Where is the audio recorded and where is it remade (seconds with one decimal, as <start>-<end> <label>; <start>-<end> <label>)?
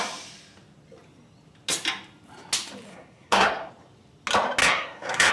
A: 0.0-2.9 recorded; 2.9-3.7 remade; 3.7-4.6 recorded; 4.6-5.3 remade